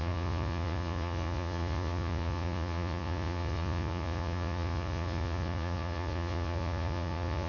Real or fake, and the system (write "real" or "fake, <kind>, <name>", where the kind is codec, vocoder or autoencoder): fake, vocoder, Vocos